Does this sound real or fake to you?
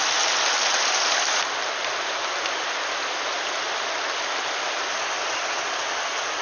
real